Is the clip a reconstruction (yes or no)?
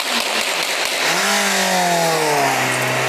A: no